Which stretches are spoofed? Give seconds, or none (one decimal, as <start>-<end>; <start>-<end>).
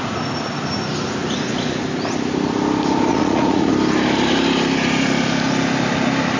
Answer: 3.1-3.7